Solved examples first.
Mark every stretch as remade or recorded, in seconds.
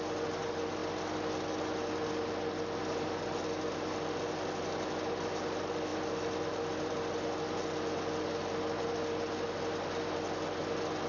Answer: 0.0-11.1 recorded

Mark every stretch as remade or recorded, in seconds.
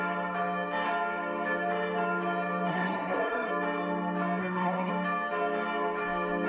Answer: 0.0-2.7 recorded; 2.7-3.5 remade; 3.5-4.4 recorded; 4.4-4.9 remade; 4.9-6.5 recorded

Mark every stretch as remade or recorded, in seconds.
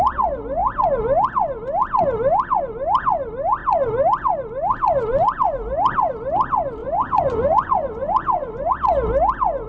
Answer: 0.0-6.8 recorded; 6.8-8.7 remade; 8.7-9.7 recorded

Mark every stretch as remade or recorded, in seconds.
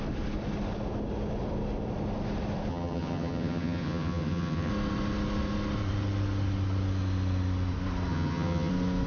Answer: 0.0-2.7 recorded; 2.7-4.7 remade; 4.7-8.1 recorded; 8.1-8.7 remade; 8.7-9.1 recorded